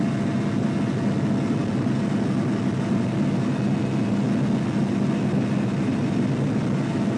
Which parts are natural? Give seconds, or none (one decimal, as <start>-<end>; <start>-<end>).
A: 0.0-7.2